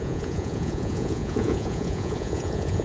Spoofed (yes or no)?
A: yes